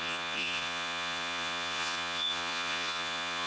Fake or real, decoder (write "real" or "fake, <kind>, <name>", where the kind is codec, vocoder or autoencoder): fake, vocoder, Vocos